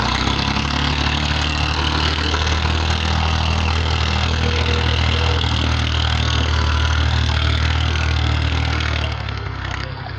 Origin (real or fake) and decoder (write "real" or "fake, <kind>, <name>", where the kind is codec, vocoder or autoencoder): fake, codec, SNAC